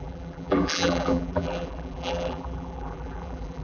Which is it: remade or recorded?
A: remade